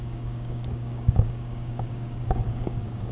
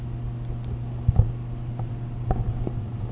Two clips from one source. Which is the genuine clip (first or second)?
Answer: second